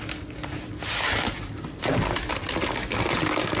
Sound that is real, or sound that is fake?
real